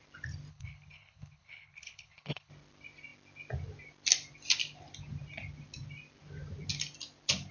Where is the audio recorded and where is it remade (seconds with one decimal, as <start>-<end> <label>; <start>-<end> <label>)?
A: 0.0-0.5 recorded; 0.5-2.5 remade; 2.5-7.5 recorded

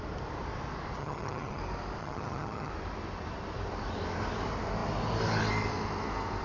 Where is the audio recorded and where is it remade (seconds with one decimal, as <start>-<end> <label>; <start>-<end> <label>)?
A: 0.0-1.0 recorded; 1.0-1.6 remade; 1.6-2.0 recorded; 2.0-2.7 remade; 2.7-6.4 recorded

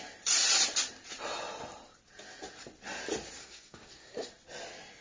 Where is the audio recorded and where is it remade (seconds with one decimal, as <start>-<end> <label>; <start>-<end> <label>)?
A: 0.0-3.4 recorded; 3.4-4.3 remade; 4.3-5.0 recorded

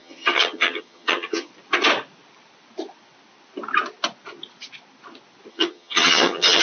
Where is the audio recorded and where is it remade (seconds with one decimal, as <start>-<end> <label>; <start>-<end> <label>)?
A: 0.0-1.5 remade; 1.5-5.5 recorded; 5.5-6.6 remade